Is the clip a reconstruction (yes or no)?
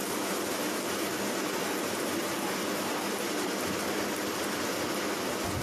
no